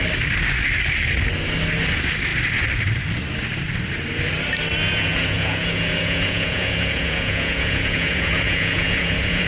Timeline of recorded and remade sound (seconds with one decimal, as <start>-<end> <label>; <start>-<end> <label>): 0.0-4.8 recorded; 4.8-9.5 remade